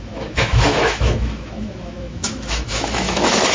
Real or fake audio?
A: fake